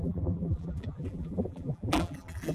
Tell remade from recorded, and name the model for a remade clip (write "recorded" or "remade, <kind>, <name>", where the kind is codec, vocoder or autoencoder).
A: remade, vocoder, BigVGAN v2